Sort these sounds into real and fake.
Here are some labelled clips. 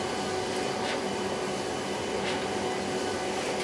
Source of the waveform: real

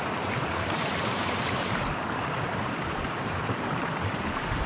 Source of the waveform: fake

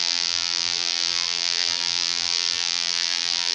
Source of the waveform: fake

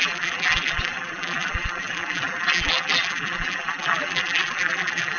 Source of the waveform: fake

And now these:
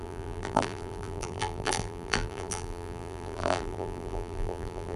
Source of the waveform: fake